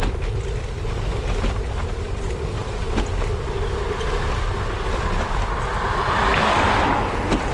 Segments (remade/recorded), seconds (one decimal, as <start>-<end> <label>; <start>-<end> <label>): 0.0-7.5 recorded